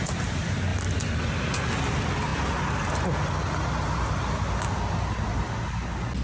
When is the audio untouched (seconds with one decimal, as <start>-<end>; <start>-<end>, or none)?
0.0-6.2